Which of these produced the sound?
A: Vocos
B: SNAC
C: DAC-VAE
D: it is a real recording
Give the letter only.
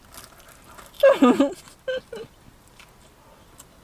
D